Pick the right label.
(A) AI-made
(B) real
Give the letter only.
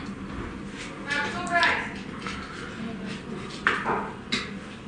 B